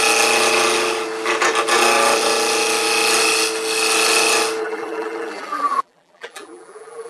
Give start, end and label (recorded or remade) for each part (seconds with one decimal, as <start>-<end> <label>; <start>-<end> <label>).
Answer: 0.0-4.6 recorded; 4.6-7.1 remade